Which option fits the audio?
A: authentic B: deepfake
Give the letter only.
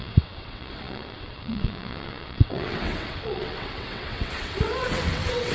B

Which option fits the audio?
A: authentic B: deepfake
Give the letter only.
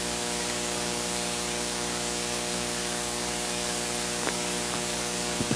B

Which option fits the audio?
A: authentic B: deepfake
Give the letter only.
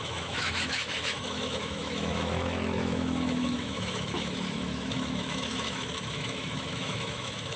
B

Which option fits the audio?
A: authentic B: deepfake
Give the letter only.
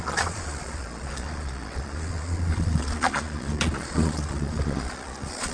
B